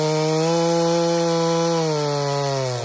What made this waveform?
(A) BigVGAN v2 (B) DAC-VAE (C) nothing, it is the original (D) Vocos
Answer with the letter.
C